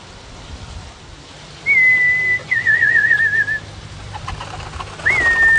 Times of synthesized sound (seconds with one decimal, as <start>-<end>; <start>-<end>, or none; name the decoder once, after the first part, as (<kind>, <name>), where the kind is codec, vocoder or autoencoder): 2.4-3.2 (vocoder, Vocos)

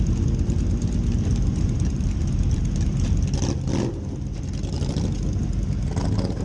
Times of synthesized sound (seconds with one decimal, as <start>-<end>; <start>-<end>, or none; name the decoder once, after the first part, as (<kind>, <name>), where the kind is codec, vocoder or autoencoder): 1.5-3.1 (vocoder, BigVGAN v2)